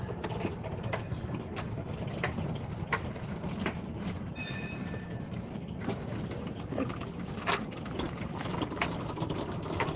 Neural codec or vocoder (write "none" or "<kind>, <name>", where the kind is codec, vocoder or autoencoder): vocoder, BigVGAN v2